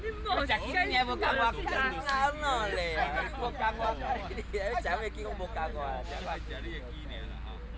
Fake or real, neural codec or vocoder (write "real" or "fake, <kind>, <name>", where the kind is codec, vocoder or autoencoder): real